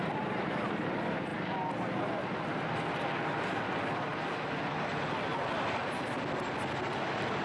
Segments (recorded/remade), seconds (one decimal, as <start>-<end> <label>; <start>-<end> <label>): 0.0-7.4 recorded